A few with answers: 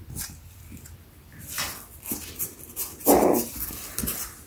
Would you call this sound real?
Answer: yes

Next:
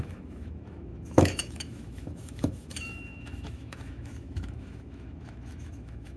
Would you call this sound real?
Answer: no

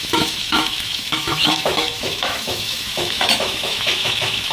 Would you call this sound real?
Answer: no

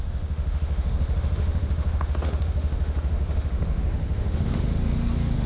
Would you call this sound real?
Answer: no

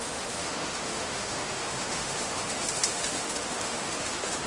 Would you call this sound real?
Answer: no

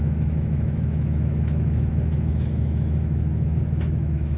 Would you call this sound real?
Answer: no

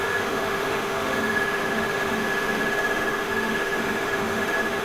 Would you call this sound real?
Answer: no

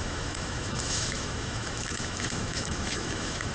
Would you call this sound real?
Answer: no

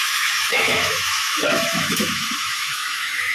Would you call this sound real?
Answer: no